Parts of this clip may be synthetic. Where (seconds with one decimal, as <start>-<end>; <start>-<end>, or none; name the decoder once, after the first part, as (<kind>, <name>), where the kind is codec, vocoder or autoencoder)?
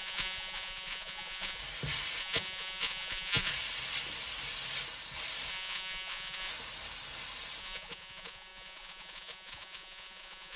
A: 0.0-1.6 (vocoder, Vocos); 2.2-3.5; 5.5-6.5; 7.6-10.6